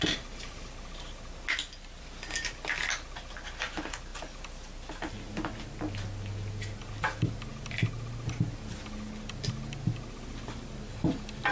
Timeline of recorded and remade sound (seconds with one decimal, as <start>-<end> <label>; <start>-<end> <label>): 0.0-11.5 recorded